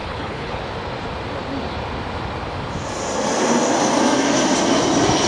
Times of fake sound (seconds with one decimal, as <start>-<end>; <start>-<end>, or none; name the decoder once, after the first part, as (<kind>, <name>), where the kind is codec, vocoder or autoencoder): 0.0-0.6 (codec, HILCodec)